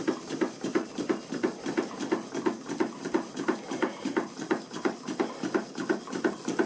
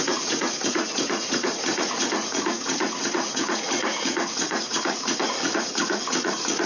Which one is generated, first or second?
second